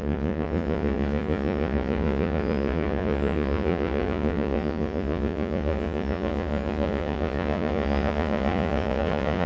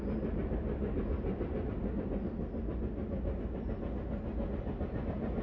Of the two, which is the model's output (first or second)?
first